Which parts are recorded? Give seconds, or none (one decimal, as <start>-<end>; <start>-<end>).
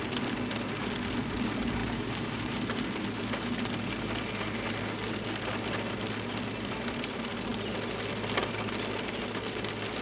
0.0-1.8; 2.6-10.0